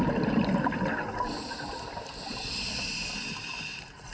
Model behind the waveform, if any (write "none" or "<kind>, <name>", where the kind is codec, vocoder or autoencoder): none